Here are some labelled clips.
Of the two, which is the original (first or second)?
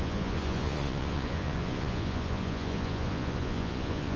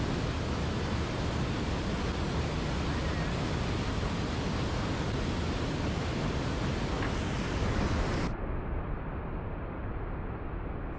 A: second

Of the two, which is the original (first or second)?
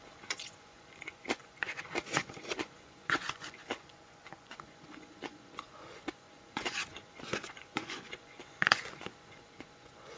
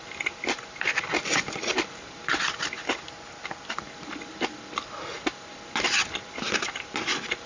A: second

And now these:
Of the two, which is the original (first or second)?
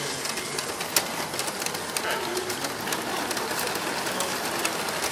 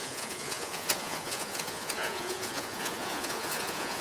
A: first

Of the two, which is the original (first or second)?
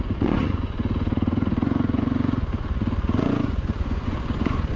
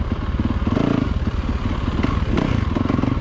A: second